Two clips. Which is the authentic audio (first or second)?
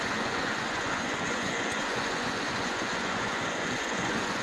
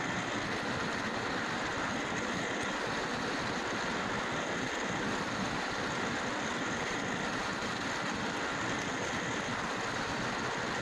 second